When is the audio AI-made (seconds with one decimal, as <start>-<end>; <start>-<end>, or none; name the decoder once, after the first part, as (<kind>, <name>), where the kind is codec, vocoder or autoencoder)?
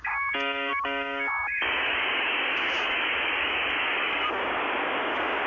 0.0-5.5 (codec, DAC)